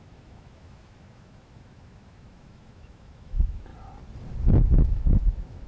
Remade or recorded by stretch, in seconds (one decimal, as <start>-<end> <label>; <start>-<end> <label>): 0.0-3.7 remade; 3.7-4.6 recorded; 4.6-5.7 remade

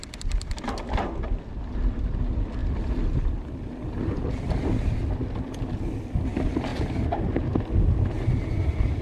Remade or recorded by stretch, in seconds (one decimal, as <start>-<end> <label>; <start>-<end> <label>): 0.0-9.0 recorded

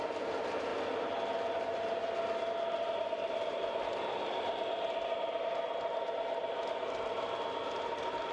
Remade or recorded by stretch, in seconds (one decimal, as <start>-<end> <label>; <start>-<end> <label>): 0.0-8.3 recorded

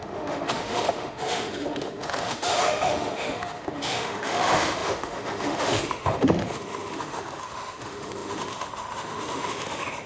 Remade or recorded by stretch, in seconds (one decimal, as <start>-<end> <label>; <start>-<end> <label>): 0.0-10.1 remade